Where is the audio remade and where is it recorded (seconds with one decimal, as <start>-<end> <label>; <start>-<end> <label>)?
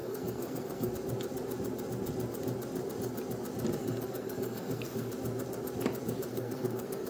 0.0-0.9 remade; 0.9-3.8 recorded; 3.8-5.1 remade; 5.1-6.3 recorded; 6.3-7.1 remade